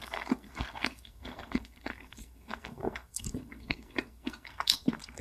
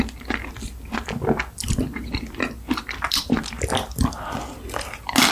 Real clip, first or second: second